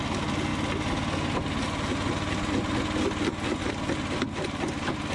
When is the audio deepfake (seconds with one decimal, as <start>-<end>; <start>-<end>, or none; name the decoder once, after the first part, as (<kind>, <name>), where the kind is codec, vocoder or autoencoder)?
none